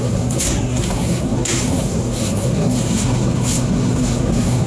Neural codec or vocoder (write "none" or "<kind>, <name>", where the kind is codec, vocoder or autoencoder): codec, SNAC